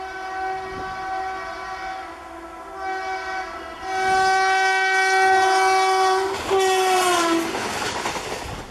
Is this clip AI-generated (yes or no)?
no